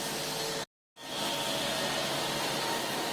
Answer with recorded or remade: recorded